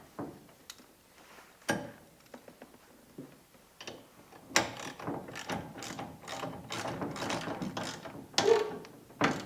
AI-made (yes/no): no